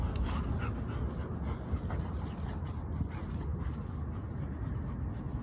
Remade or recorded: recorded